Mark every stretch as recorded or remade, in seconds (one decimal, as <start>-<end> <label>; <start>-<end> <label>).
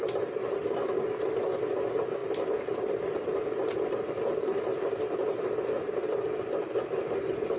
0.0-7.6 recorded